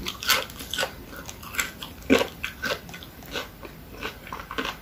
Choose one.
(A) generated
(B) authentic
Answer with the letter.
B